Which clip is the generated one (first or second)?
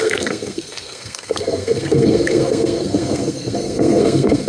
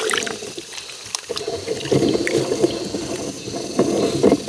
first